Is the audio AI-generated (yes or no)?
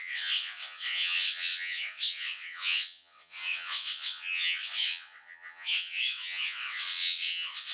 yes